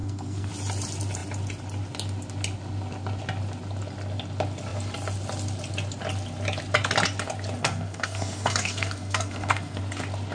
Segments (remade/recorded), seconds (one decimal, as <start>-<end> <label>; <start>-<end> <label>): 0.0-0.5 remade; 0.5-7.6 recorded; 7.6-9.8 remade; 9.8-10.3 recorded